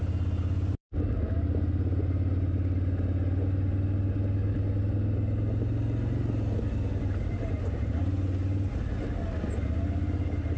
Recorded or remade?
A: recorded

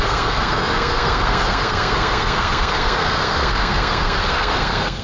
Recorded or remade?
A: remade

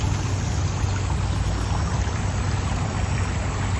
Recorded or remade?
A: recorded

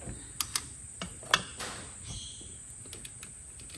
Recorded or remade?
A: recorded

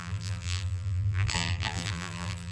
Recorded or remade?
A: remade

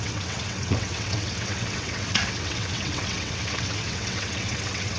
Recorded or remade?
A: remade